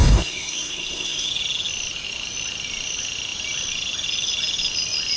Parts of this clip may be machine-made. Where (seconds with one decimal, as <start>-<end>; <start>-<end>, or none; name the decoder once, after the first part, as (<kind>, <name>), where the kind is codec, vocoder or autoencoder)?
0.0-1.3 (codec, SNAC)